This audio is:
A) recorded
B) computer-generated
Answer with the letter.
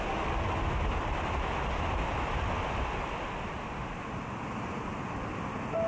A